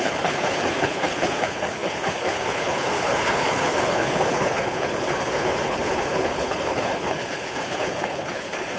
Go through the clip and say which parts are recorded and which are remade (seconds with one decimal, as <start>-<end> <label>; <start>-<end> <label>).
0.0-8.8 remade